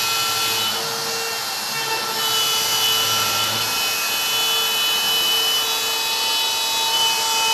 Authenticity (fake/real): real